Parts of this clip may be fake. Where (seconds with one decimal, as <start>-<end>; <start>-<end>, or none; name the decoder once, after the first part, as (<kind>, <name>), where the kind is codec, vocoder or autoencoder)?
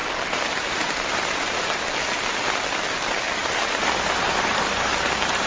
0.0-1.8 (vocoder, BigVGAN v2); 3.4-4.9